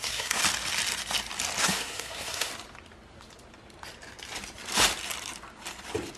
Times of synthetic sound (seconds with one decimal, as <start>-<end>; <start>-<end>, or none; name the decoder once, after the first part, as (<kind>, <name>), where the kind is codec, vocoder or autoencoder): 0.0-0.4 (codec, SNAC); 1.6-2.5